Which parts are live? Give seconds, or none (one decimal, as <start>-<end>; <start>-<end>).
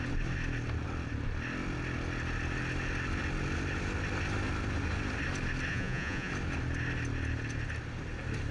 0.0-5.7; 6.3-8.5